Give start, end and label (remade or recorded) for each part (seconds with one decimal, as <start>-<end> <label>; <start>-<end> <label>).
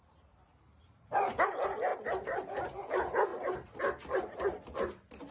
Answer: 0.0-0.5 recorded; 0.5-1.3 remade; 1.3-1.9 recorded; 1.9-2.9 remade; 2.9-3.3 recorded; 3.3-3.8 remade; 3.8-5.3 recorded